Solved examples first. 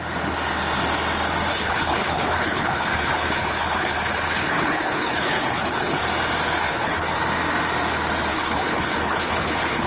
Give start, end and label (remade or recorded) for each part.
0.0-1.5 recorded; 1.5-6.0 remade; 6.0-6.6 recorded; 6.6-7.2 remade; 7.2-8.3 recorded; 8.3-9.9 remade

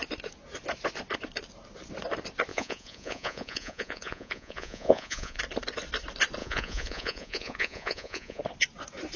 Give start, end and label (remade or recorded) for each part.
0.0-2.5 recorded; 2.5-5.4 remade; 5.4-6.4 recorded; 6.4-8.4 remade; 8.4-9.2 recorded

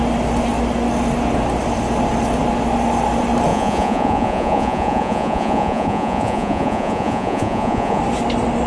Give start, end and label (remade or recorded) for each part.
0.0-3.5 recorded; 3.5-8.0 remade; 8.0-8.7 recorded

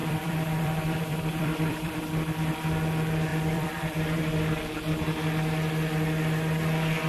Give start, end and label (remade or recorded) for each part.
0.0-2.0 remade; 2.0-3.3 recorded; 3.3-4.2 remade; 4.2-7.1 recorded

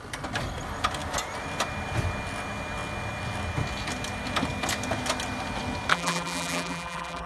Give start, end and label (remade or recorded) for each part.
0.0-5.9 recorded; 5.9-7.3 remade

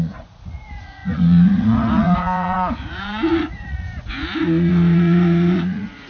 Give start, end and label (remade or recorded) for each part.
0.0-6.1 remade

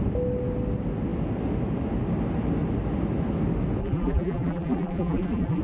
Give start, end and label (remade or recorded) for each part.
0.0-3.8 recorded; 3.8-5.6 remade